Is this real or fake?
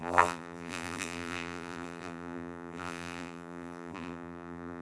fake